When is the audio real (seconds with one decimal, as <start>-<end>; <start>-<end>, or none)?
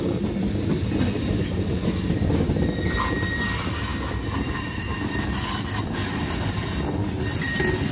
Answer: 0.0-7.9